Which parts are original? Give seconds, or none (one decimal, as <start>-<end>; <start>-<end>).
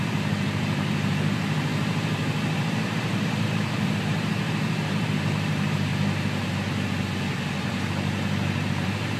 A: 5.9-8.7